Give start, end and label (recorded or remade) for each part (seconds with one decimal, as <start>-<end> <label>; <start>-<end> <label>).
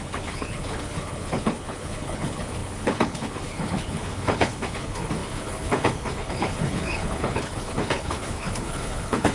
0.0-9.3 remade